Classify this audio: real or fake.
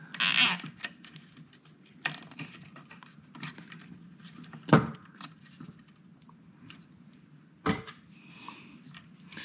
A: real